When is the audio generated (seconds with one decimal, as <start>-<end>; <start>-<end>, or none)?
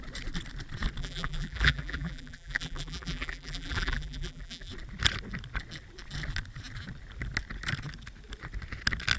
1.0-4.7